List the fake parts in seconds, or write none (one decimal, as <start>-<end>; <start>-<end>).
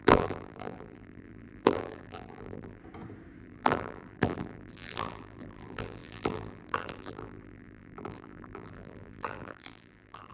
0.0-2.8; 3.4-10.3